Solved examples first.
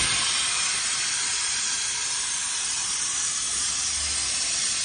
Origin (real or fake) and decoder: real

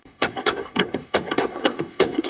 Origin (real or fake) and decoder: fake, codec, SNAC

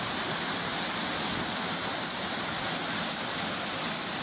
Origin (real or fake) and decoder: real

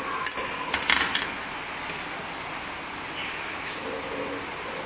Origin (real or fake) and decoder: real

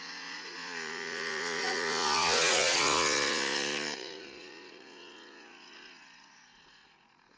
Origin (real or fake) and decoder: fake, vocoder, Vocos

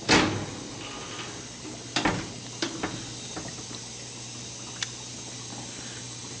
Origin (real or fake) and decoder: real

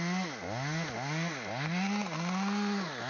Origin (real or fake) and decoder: real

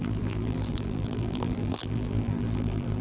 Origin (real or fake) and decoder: fake, vocoder, BigVGAN v2